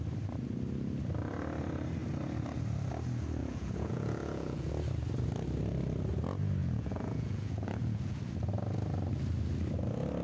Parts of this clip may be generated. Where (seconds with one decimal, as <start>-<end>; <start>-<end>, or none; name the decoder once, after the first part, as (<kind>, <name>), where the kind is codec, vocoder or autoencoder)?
3.4-4.7 (vocoder, Vocos); 6.6-8.2